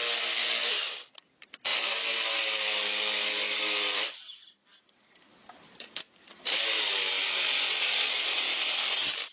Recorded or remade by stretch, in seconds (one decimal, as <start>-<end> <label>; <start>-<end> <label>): 0.0-4.3 recorded; 4.3-8.1 remade; 8.1-9.3 recorded